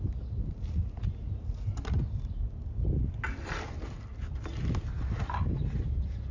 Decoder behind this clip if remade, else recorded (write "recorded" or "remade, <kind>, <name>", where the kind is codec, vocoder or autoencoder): recorded